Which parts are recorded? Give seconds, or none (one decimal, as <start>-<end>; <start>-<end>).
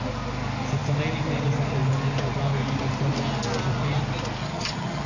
0.0-4.4